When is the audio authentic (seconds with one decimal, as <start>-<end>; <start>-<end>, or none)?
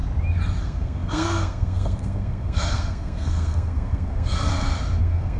0.0-0.6; 4.5-5.0